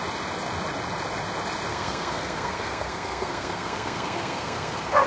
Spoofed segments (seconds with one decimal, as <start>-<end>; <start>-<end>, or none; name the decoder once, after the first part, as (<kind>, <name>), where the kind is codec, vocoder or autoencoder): 1.7-5.1 (codec, SNAC)